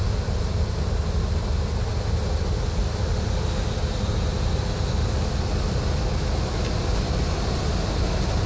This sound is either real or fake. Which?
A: real